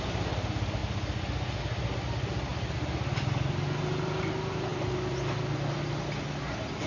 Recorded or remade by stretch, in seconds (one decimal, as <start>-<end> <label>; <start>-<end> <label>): 0.0-6.9 recorded